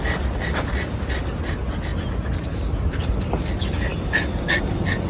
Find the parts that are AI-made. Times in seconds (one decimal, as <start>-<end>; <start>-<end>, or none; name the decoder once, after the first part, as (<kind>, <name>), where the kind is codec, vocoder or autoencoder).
none